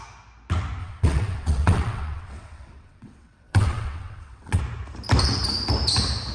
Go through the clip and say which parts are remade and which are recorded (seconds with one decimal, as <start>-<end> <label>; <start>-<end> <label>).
0.0-0.8 recorded; 0.8-4.6 remade; 4.6-6.3 recorded